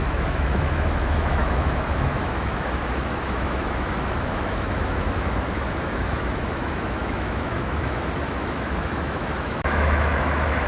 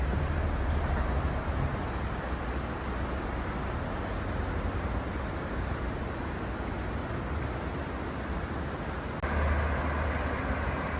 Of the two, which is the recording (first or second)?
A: second